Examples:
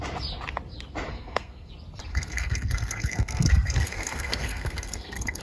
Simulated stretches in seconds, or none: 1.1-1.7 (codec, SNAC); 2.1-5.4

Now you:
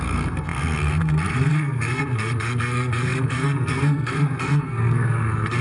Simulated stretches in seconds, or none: 0.0-5.6 (codec, SNAC)